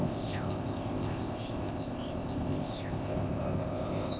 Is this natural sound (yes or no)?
no